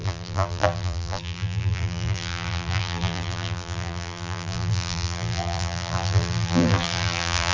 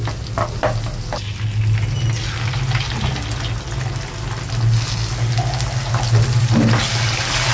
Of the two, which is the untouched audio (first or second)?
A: second